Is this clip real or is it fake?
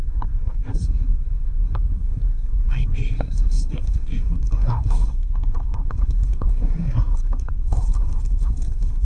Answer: fake